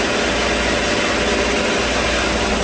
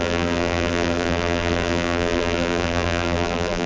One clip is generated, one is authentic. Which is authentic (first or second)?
first